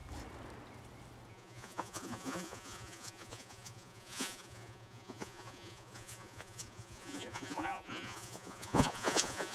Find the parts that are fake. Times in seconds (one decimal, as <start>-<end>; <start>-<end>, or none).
1.3-9.5